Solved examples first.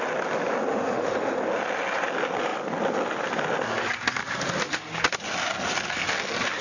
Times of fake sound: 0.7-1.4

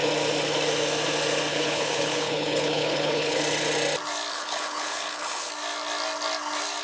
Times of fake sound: 1.5-3.4; 4.3-5.5

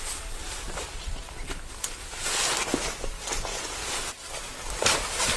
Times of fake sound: 3.8-4.5

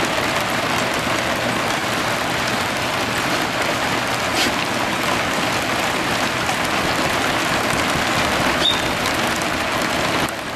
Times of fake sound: 1.8-3.6

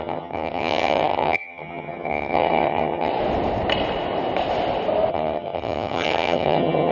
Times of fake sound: 0.0-3.1; 5.1-6.9